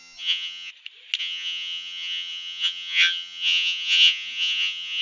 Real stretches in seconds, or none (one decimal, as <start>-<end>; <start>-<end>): 0.7-1.2

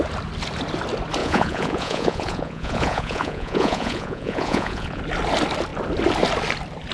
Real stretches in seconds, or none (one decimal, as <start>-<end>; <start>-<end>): 0.0-1.2; 5.0-6.9

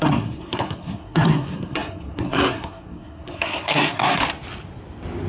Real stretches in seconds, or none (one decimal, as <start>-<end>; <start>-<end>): 4.2-5.3

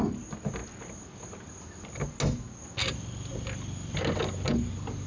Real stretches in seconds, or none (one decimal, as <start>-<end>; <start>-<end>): 0.0-5.1

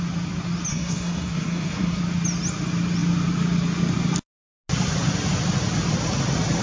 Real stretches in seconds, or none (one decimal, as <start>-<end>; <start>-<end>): 0.0-0.7; 2.0-6.6